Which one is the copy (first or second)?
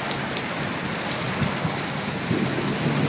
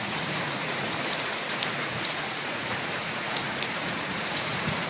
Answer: second